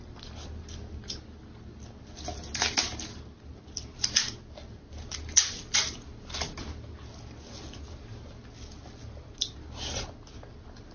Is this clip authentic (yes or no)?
yes